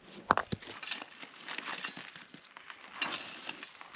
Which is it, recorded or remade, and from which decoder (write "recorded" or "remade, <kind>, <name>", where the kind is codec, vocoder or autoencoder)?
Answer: recorded